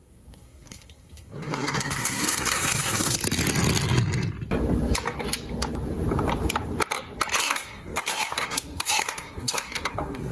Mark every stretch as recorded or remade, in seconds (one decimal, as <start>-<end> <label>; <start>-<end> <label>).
0.0-3.2 remade; 3.2-7.4 recorded; 7.4-10.3 remade